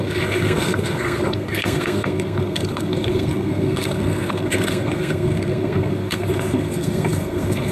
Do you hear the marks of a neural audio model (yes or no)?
yes